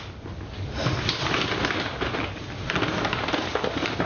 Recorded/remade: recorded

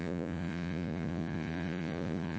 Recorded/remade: remade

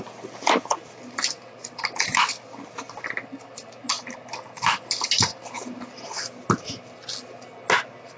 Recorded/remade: recorded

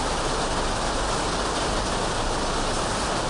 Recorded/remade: recorded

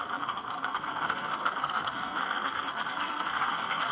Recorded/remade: remade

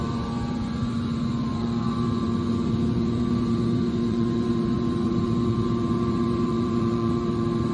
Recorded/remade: remade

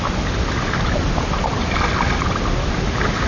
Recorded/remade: recorded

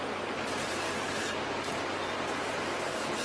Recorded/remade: remade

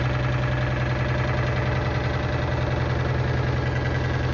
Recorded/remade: recorded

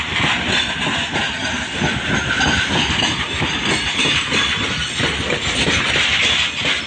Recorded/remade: recorded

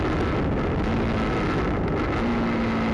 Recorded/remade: recorded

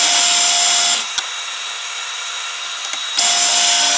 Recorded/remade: recorded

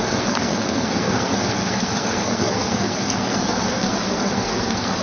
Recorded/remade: remade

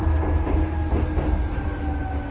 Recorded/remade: recorded